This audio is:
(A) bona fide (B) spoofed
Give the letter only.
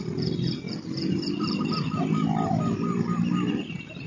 B